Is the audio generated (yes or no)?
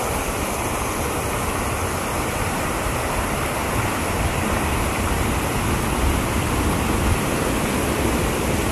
no